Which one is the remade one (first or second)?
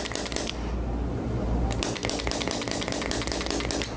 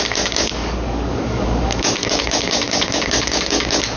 second